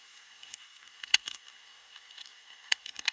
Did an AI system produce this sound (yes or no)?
yes